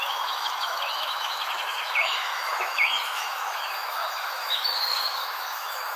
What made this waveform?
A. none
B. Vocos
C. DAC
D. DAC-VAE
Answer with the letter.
D